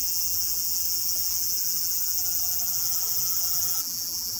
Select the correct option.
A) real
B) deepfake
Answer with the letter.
B